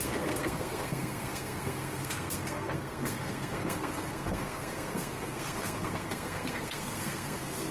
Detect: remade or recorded remade